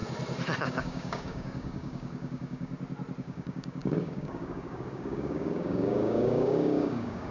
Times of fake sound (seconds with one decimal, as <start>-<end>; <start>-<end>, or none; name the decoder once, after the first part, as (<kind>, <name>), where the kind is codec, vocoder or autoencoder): 0.6-2.7 (codec, DAC); 3.2-7.3